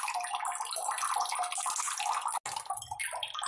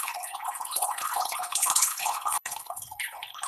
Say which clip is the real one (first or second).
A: first